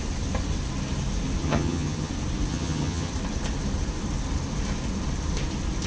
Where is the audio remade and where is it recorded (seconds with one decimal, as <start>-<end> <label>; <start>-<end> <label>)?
0.0-1.4 recorded; 1.4-2.1 remade; 2.1-2.5 recorded; 2.5-3.1 remade; 3.1-5.9 recorded

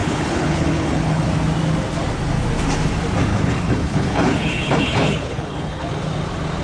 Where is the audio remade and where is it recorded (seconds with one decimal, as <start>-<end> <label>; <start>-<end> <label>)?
0.0-1.3 remade; 1.3-3.3 recorded; 3.3-5.9 remade; 5.9-6.6 recorded

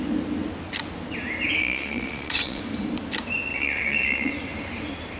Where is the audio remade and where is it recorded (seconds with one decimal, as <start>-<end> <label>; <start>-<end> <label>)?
0.0-1.6 recorded; 1.6-2.6 remade; 2.6-3.5 recorded; 3.5-4.3 remade; 4.3-5.2 recorded

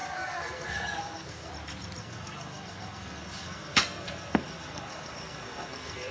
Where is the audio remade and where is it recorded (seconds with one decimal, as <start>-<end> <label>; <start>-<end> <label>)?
0.0-1.5 remade; 1.5-2.0 recorded; 2.0-6.1 remade

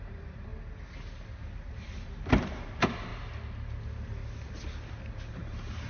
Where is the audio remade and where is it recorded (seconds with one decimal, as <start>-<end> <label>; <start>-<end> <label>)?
0.0-0.5 remade; 0.5-1.7 recorded; 1.7-3.1 remade; 3.1-5.3 recorded; 5.3-5.9 remade

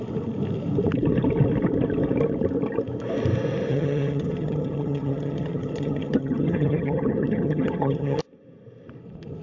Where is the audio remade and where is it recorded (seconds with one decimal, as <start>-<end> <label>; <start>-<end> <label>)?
0.0-3.7 recorded; 3.7-8.2 remade; 8.2-9.4 recorded